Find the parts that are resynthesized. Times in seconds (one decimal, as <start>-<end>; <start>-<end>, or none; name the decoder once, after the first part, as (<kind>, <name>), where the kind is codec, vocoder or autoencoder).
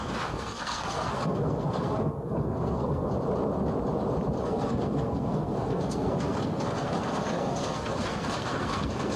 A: 0.0-3.1 (codec, SNAC); 4.4-9.2